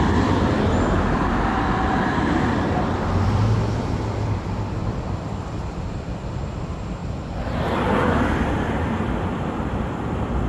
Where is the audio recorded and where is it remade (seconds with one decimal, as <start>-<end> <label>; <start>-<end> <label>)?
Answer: 0.0-7.0 remade; 7.0-9.8 recorded; 9.8-10.5 remade